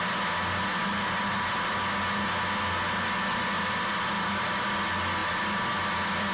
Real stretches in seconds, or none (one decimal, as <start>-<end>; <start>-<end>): 0.0-6.3